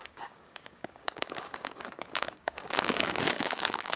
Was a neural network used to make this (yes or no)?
yes